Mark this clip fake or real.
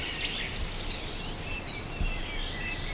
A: real